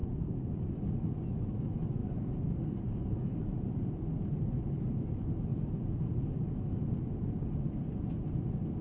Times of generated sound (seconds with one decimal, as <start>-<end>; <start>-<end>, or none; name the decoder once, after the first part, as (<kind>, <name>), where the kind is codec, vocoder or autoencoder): 0.0-0.8 (codec, DAC); 2.0-3.4